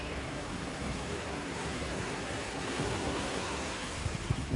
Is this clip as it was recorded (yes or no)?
no